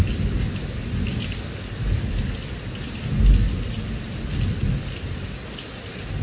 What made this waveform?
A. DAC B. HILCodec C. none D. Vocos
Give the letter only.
C